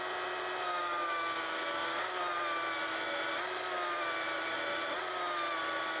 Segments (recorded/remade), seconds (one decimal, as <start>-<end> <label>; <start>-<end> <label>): 0.0-0.7 recorded; 0.7-2.2 remade; 2.2-6.0 recorded

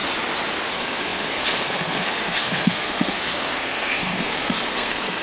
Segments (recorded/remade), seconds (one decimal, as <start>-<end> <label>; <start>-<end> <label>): 0.0-0.7 recorded; 0.7-5.2 remade